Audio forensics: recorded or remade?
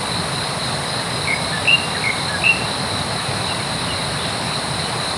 recorded